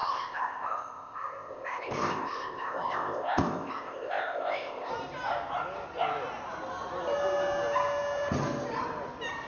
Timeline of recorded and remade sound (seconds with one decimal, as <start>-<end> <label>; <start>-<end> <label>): 0.0-4.9 remade; 4.9-9.5 recorded